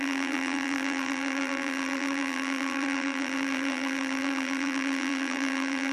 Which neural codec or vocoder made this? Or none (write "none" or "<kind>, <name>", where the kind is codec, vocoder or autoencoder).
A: vocoder, BigVGAN v2